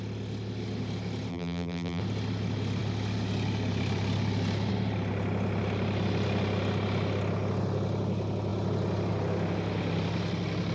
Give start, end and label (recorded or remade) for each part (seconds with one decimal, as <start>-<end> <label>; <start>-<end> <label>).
0.0-1.3 recorded; 1.3-2.0 remade; 2.0-10.7 recorded